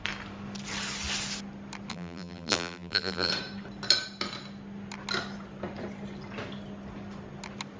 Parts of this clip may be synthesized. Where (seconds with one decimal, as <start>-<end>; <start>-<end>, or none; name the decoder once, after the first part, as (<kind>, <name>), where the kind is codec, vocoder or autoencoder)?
1.9-3.3 (vocoder, BigVGAN v2)